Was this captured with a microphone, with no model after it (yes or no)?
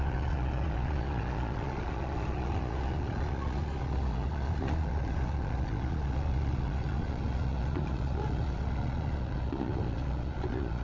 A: no